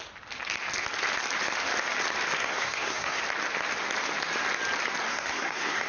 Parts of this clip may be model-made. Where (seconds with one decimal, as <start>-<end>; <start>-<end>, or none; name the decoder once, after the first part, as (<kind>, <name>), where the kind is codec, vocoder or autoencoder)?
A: 2.4-3.2 (codec, SNAC); 5.1-5.9